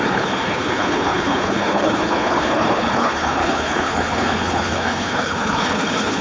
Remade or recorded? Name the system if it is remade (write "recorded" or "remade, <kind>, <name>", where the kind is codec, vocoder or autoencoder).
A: remade, codec, HILCodec